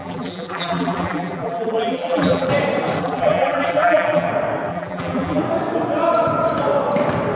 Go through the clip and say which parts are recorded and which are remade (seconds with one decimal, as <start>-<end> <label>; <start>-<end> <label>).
0.0-2.5 remade; 2.5-3.0 recorded; 3.0-4.3 remade; 4.3-4.7 recorded; 4.7-5.4 remade; 5.4-7.4 recorded

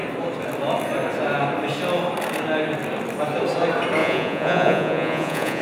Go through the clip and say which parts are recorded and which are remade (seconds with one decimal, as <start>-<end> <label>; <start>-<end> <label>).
0.0-4.0 recorded; 4.0-5.6 remade

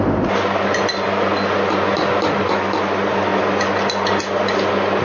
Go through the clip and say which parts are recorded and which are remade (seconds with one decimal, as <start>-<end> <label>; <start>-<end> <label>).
0.0-5.0 recorded

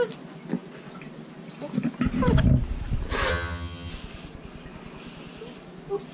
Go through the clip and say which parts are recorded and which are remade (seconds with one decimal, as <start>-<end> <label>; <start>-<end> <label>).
0.0-3.3 recorded; 3.3-3.9 remade; 3.9-6.1 recorded

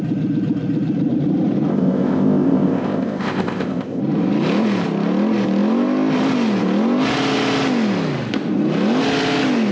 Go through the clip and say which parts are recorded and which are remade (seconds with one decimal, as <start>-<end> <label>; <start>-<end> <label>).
0.0-1.7 recorded; 1.7-4.0 remade; 4.0-9.7 recorded